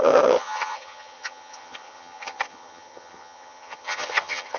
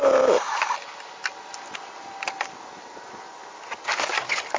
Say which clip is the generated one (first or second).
first